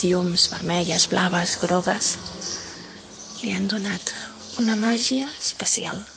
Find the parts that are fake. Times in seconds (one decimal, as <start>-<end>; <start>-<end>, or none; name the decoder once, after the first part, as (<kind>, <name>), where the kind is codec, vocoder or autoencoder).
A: 1.5-3.0 (codec, SNAC); 4.0-6.2